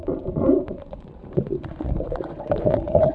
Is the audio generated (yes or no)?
yes